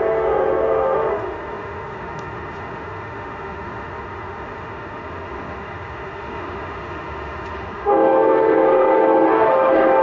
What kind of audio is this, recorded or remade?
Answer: remade